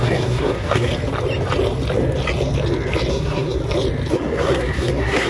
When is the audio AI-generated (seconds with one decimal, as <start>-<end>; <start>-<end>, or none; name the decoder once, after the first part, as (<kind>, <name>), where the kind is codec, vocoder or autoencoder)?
0.0-0.9 (codec, SNAC); 3.1-3.6; 4.1-5.3